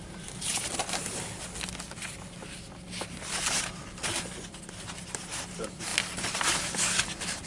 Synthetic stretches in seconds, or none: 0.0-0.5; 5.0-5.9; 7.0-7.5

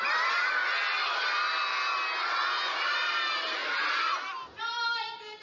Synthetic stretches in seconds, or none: 0.0-0.6; 2.8-5.4